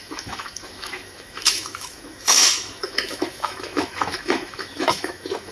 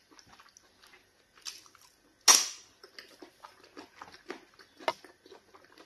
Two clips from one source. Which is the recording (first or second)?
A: second